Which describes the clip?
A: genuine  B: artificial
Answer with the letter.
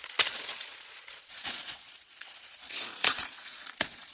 B